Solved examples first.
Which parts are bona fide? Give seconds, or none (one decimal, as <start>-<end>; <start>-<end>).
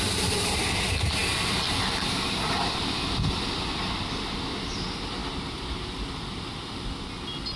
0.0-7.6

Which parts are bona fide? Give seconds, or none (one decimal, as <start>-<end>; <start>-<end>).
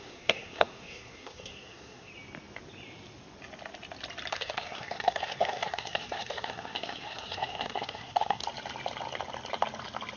2.1-4.3; 8.4-10.2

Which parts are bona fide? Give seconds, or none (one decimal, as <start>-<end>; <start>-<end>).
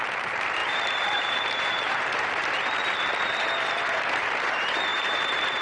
none